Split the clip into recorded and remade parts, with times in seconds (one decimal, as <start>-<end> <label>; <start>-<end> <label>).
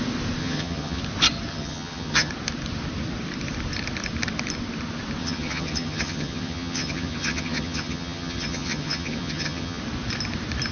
0.0-0.4 recorded; 0.4-1.0 remade; 1.0-1.5 recorded; 1.5-2.3 remade; 2.3-5.2 recorded; 5.2-9.8 remade; 9.8-10.7 recorded